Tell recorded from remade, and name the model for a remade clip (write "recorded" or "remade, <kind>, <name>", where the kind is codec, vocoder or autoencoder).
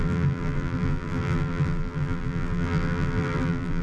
remade, vocoder, BigVGAN v2